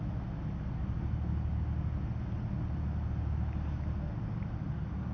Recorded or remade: recorded